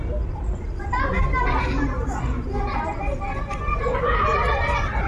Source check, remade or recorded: recorded